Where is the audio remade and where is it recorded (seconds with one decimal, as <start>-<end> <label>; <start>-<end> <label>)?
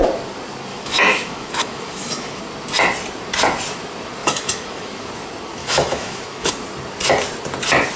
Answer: 0.0-0.7 recorded; 0.7-2.4 remade; 2.4-4.2 recorded; 4.2-5.1 remade; 5.1-5.6 recorded; 5.6-6.5 remade; 6.5-8.0 recorded